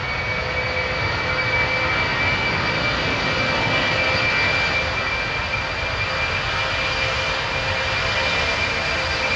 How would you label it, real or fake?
real